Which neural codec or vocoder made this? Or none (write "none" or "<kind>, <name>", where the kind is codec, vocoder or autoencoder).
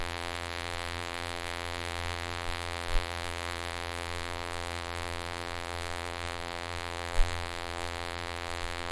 vocoder, BigVGAN v2